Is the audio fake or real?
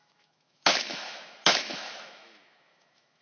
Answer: fake